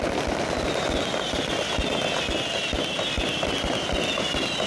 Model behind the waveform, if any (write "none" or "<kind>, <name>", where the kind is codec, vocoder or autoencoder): none